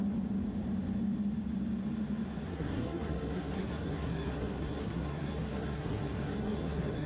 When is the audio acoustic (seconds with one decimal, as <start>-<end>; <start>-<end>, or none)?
0.0-2.5